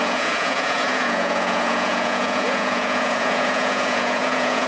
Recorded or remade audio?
remade